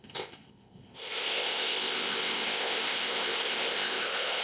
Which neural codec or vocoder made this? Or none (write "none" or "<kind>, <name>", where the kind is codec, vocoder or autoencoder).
codec, ZipCodec